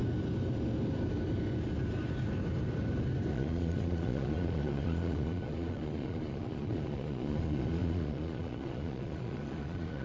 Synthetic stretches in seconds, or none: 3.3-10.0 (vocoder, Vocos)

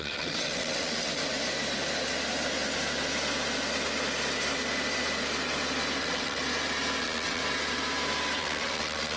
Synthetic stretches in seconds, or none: 0.0-1.2 (vocoder, WaveNeXt); 6.0-6.4; 7.0-7.4; 8.4-9.2